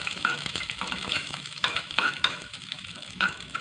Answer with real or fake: fake